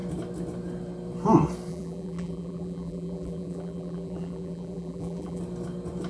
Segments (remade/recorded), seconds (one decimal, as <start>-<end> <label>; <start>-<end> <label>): 0.0-1.7 recorded; 1.7-5.4 remade; 5.4-6.1 recorded